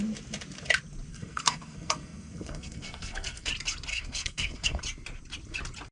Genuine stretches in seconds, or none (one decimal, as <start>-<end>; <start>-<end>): 0.0-1.1; 3.5-3.9; 4.8-5.9